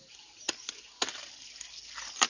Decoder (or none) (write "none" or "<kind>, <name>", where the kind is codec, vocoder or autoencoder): none